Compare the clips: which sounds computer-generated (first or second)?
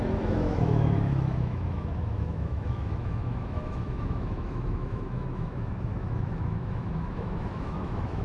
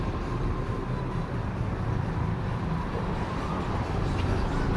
first